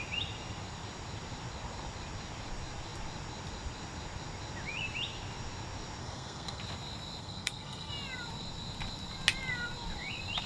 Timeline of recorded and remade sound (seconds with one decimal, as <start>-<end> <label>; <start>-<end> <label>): 0.0-6.0 recorded; 6.0-6.6 remade; 6.6-7.2 recorded; 7.2-7.9 remade; 7.9-10.5 recorded